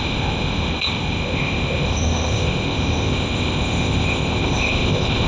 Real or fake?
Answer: fake